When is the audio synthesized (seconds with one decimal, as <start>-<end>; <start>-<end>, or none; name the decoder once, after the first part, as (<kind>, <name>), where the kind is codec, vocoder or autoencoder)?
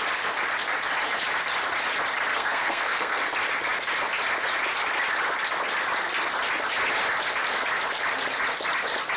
2.3-3.2 (codec, SNAC)